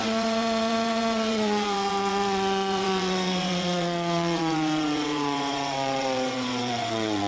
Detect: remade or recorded remade